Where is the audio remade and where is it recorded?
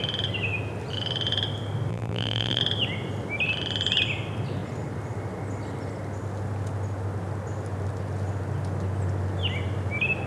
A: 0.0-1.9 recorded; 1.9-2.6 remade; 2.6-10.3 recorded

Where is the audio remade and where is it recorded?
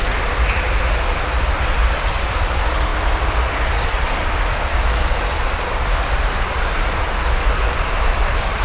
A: 0.0-8.6 remade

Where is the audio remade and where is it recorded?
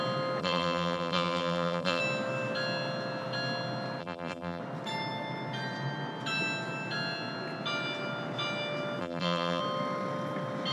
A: 0.0-0.4 recorded; 0.4-2.0 remade; 2.0-4.0 recorded; 4.0-4.6 remade; 4.6-9.0 recorded; 9.0-9.6 remade; 9.6-10.7 recorded